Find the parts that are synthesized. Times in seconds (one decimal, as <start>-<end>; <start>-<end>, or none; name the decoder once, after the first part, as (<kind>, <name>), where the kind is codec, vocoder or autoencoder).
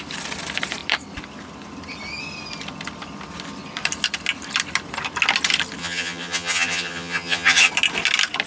5.8-7.7 (vocoder, HiFi-GAN)